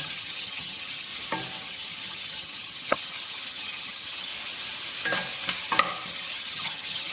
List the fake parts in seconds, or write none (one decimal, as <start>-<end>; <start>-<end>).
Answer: 0.0-1.1; 1.7-4.3; 6.1-7.1